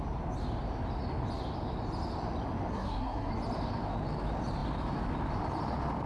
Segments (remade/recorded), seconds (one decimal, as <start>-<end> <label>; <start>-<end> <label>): 0.0-2.7 recorded; 2.7-3.3 remade; 3.3-6.1 recorded